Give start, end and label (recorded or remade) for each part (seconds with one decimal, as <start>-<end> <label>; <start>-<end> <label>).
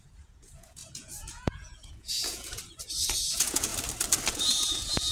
0.0-2.6 remade; 2.6-3.3 recorded; 3.3-3.7 remade; 3.7-4.3 recorded; 4.3-5.1 remade